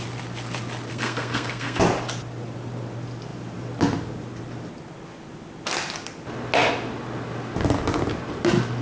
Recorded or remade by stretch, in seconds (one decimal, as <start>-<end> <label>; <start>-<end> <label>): 0.0-0.9 recorded; 0.9-1.8 remade; 1.8-8.8 recorded